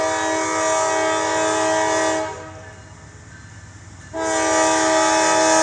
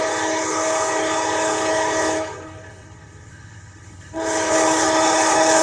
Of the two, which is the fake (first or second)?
second